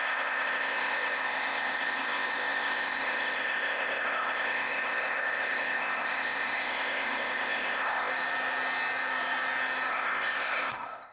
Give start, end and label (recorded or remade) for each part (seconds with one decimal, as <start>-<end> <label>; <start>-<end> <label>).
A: 0.0-8.1 remade; 8.1-9.9 recorded; 9.9-11.1 remade